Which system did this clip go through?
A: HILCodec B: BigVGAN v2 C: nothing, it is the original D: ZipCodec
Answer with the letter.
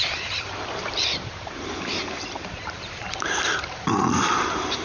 B